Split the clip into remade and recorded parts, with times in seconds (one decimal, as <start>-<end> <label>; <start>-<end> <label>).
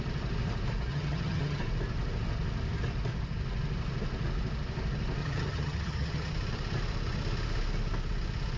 0.0-0.9 recorded; 0.9-1.6 remade; 1.6-5.2 recorded; 5.2-6.3 remade; 6.3-8.6 recorded